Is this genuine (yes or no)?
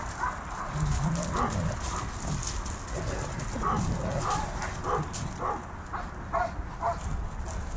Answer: yes